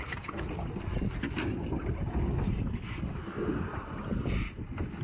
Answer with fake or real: real